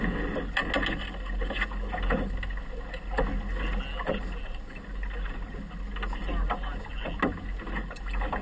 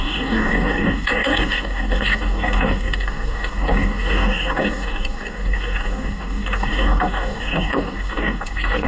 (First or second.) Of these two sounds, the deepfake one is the second